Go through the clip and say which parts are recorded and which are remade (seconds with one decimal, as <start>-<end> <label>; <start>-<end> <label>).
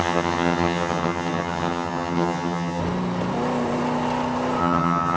0.0-2.8 remade; 2.8-4.6 recorded; 4.6-5.2 remade